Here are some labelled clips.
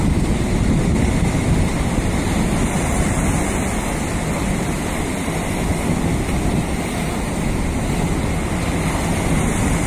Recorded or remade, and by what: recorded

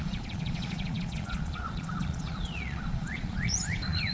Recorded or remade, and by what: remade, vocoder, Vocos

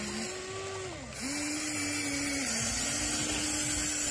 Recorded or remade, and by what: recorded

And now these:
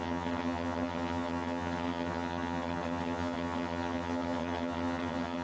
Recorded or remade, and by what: remade, vocoder, HiFi-GAN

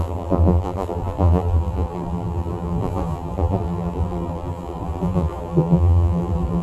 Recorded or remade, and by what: remade, vocoder, BigVGAN v2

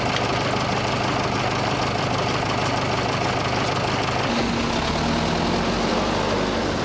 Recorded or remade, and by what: recorded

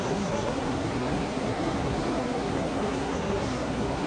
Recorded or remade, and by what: remade, codec, SNAC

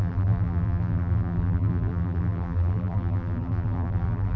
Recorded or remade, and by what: remade, vocoder, BigVGAN v2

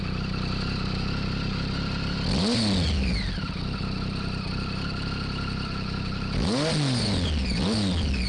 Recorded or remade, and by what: recorded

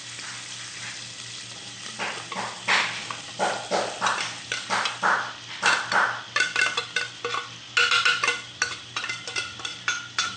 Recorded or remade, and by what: recorded